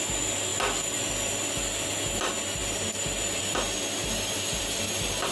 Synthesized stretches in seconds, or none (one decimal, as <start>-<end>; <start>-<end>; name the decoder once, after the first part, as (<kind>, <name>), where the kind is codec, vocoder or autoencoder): none